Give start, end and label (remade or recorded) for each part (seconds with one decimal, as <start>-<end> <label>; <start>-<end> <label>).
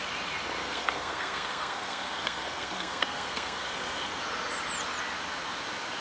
0.0-0.6 recorded; 0.6-4.2 remade; 4.2-6.0 recorded